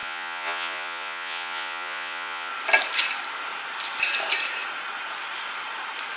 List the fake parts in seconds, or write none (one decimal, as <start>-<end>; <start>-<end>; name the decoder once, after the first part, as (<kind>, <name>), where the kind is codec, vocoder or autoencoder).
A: 0.0-2.5 (vocoder, Vocos)